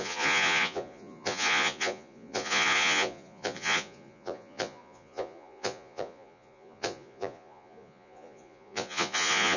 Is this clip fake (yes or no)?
yes